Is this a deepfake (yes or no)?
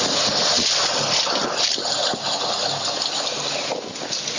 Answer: no